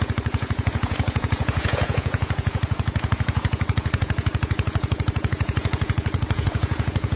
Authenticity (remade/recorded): remade